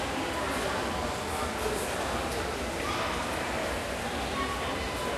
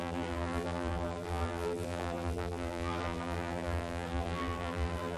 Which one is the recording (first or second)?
first